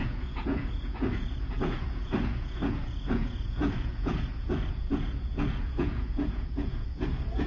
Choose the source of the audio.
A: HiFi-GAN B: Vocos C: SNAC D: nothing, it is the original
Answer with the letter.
B